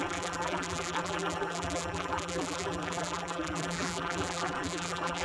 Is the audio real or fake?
fake